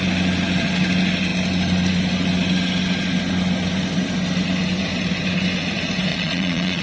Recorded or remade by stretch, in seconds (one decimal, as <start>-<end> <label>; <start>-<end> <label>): 0.0-6.1 recorded; 6.1-6.8 remade